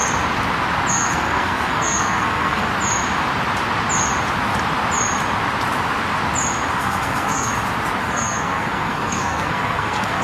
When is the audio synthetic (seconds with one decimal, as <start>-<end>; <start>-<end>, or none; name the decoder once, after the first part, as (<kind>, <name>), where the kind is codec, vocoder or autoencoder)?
0.9-2.7 (codec, SNAC); 6.7-7.5; 8.0-10.2